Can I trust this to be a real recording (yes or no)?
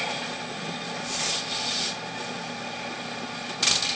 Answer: yes